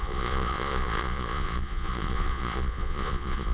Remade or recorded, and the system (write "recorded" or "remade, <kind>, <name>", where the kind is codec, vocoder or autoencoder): remade, vocoder, Vocos